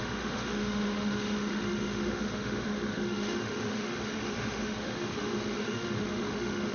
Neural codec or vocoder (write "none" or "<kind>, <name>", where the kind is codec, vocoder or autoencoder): autoencoder, DAC-VAE